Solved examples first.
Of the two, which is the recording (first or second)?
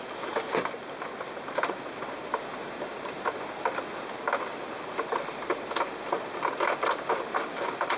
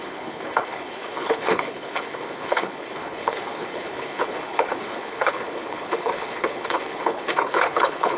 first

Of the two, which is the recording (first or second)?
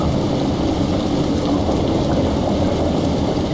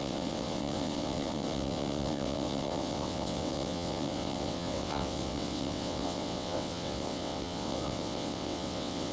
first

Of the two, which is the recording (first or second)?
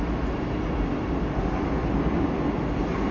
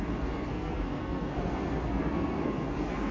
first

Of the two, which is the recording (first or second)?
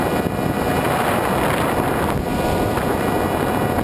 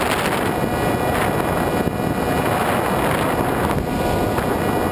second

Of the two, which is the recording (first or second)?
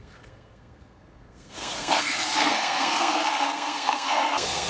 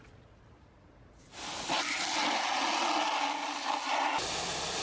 second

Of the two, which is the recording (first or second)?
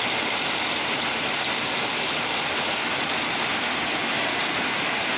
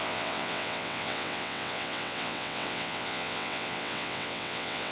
first